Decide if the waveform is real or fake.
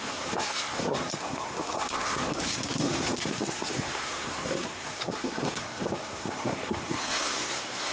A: fake